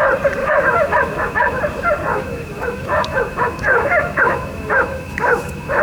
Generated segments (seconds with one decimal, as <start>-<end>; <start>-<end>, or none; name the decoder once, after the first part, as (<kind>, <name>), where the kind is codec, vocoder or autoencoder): 0.4-1.6 (autoencoder, DAC-VAE); 2.1-5.8